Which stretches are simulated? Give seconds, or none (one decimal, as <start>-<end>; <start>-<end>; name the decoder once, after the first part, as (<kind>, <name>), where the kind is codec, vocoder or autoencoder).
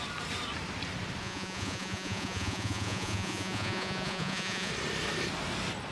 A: 1.2-4.7 (vocoder, Vocos)